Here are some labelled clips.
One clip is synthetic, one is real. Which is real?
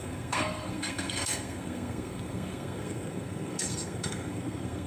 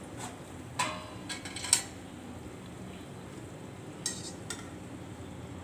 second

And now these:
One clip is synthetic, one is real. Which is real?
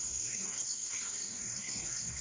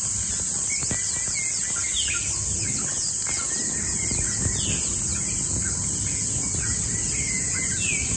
second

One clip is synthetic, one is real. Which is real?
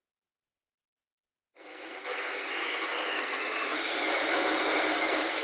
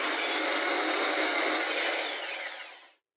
second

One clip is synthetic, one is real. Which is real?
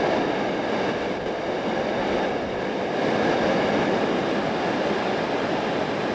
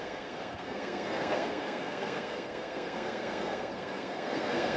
first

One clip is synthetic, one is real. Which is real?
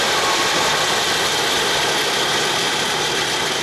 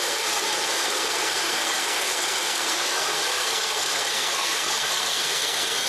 first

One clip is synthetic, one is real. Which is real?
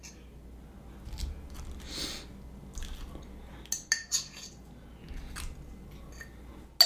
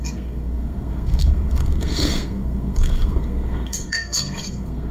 first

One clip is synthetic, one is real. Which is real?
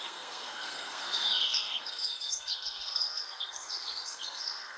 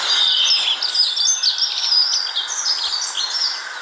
second